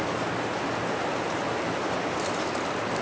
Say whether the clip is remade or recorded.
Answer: recorded